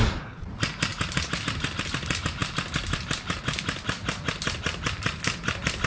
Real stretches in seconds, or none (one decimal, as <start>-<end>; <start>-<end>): 0.0-5.9